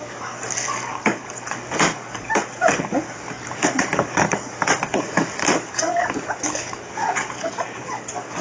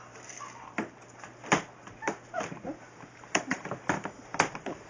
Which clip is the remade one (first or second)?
first